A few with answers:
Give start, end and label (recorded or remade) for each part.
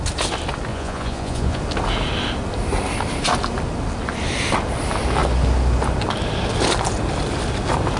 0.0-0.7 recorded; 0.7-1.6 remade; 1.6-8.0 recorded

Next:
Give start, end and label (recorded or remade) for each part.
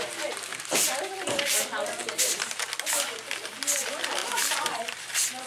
0.0-0.5 recorded; 0.5-1.1 remade; 1.1-2.0 recorded; 2.0-2.5 remade; 2.5-4.2 recorded; 4.2-5.1 remade; 5.1-5.5 recorded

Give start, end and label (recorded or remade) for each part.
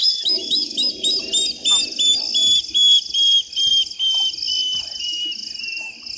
0.0-0.9 remade; 0.9-6.2 recorded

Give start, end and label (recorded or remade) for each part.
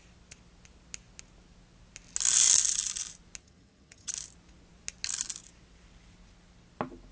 0.0-3.4 recorded; 3.4-4.1 remade; 4.1-7.1 recorded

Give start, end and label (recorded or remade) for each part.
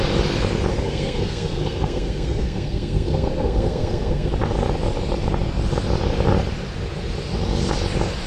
0.0-0.7 recorded; 0.7-4.3 remade; 4.3-8.3 recorded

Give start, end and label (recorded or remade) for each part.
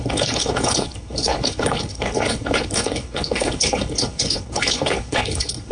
0.0-5.7 remade